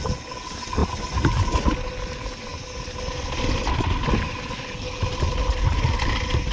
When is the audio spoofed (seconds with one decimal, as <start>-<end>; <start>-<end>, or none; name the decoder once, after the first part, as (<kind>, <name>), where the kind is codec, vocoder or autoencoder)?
none